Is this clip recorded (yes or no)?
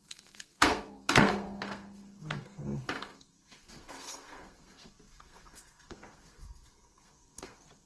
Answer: no